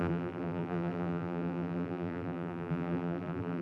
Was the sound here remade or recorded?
remade